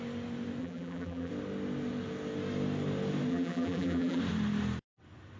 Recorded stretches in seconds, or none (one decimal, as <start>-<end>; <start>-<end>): 0.0-0.6; 1.3-3.3; 4.2-5.4